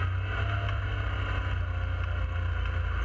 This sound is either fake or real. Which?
real